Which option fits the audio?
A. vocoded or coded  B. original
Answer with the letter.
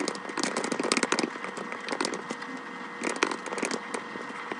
B